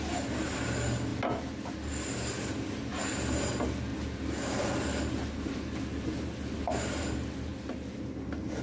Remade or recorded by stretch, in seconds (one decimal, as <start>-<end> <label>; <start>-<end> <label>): 0.0-8.6 recorded